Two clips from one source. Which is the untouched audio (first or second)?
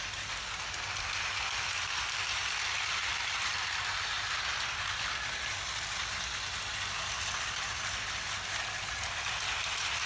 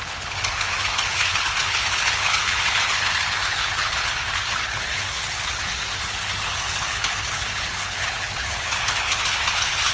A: first